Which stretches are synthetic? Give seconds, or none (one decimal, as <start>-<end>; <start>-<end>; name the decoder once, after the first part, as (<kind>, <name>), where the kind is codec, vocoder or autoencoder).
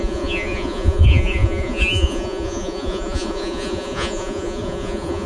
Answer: 0.0-5.3 (vocoder, Vocos)